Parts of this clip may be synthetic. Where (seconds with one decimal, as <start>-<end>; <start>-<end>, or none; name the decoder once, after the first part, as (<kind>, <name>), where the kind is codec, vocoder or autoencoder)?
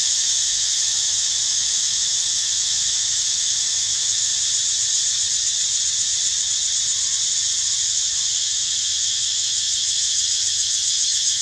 0.0-4.3 (autoencoder, DAC-VAE); 7.9-11.4